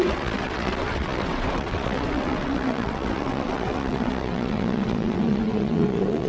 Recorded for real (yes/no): no